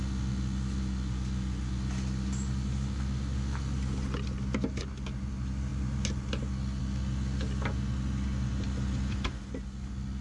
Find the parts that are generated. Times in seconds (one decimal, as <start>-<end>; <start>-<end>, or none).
none